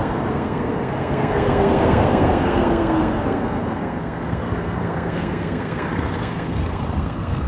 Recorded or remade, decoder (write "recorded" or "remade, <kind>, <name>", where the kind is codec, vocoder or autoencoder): remade, codec, SNAC